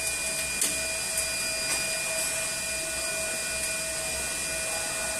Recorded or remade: recorded